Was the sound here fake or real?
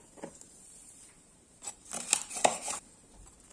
fake